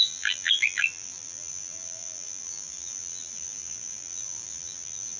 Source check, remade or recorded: remade